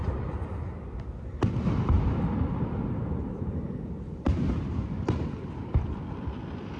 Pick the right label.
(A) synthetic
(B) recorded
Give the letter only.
B